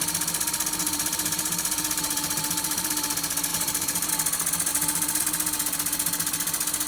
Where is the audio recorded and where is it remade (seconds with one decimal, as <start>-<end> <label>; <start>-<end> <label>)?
0.0-0.8 recorded; 0.8-2.9 remade; 2.9-3.5 recorded; 3.5-4.1 remade; 4.1-4.7 recorded; 4.7-5.2 remade; 5.2-6.9 recorded